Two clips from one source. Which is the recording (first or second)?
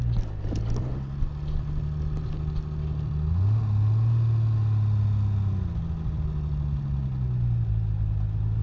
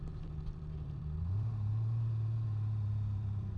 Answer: first